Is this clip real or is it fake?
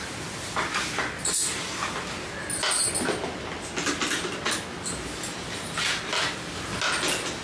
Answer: real